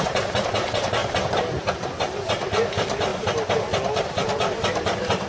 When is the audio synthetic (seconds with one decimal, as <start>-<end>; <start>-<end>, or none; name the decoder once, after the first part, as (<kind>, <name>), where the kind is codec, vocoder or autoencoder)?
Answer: 0.0-1.0 (vocoder, BigVGAN v2); 2.3-3.1; 4.0-5.3